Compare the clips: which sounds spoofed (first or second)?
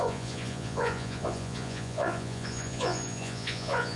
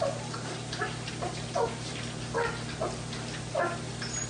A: first